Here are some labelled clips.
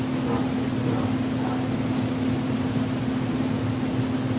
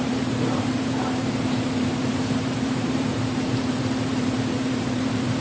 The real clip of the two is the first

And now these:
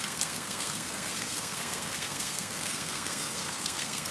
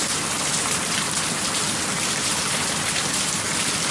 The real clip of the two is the second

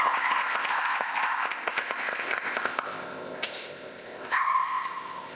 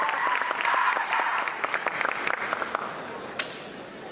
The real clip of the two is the second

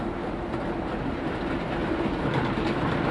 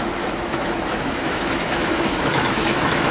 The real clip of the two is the first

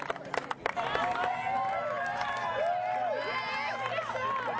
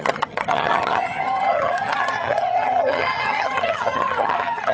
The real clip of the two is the first